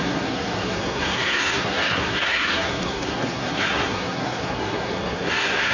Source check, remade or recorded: remade